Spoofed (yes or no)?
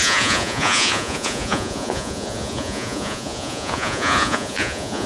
yes